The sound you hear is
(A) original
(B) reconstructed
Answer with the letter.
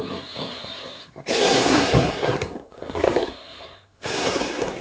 B